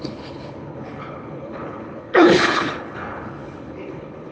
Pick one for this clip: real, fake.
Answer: fake